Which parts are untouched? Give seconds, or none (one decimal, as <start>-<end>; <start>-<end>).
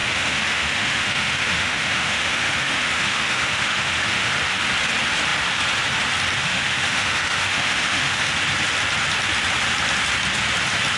4.3-6.4; 8.3-11.0